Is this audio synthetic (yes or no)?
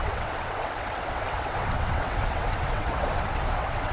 yes